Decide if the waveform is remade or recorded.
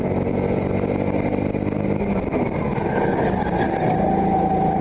recorded